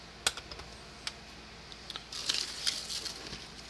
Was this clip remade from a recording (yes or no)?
no